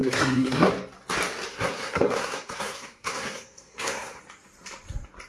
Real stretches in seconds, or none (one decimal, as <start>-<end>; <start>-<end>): 0.7-1.5; 4.2-5.3